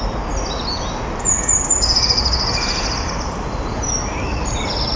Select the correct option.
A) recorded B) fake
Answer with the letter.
A